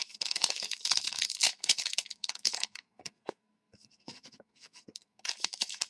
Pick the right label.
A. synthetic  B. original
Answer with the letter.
A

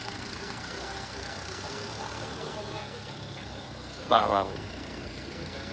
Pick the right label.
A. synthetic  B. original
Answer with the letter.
A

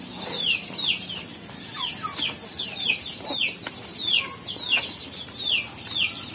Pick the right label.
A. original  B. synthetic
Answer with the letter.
A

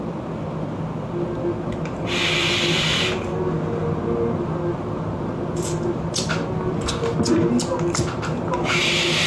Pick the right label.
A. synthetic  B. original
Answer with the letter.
B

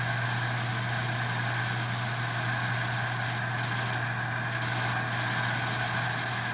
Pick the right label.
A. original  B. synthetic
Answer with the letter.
A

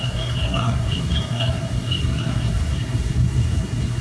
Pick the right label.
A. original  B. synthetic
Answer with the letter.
B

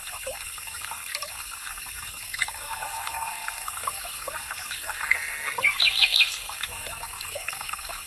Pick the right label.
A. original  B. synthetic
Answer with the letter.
B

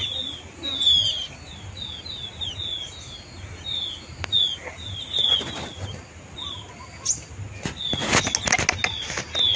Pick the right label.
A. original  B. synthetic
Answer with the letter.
A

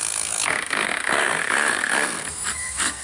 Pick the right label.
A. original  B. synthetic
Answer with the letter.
B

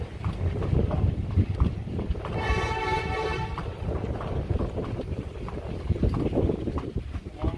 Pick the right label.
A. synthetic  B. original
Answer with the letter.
B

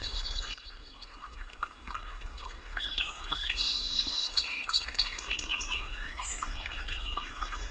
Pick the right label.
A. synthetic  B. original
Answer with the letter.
A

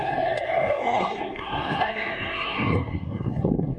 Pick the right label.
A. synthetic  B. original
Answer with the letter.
A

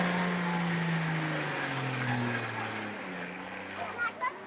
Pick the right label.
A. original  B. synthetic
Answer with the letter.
A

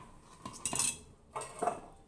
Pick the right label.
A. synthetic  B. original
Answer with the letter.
B